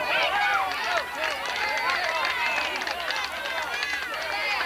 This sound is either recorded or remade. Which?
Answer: recorded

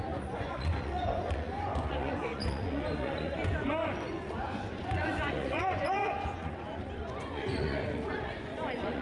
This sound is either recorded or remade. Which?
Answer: remade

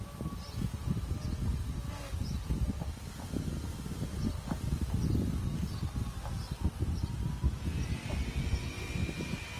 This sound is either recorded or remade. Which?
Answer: recorded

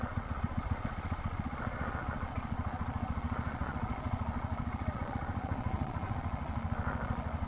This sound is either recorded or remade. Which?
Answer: remade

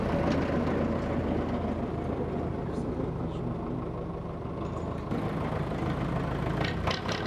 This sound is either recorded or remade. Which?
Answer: recorded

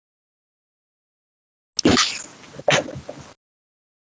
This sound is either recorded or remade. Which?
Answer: recorded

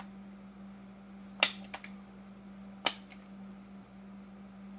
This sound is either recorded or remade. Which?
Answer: recorded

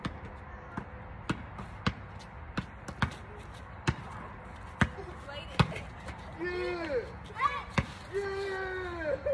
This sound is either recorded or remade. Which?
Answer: recorded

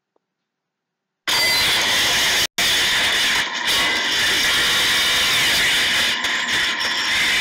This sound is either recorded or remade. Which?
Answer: recorded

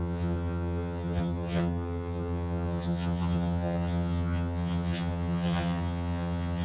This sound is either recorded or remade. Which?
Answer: remade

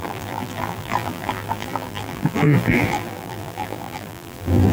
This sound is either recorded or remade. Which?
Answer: remade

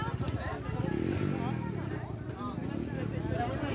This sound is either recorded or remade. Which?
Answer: recorded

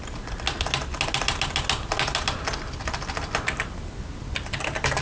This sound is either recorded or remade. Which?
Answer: recorded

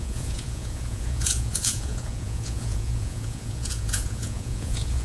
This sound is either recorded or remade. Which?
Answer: remade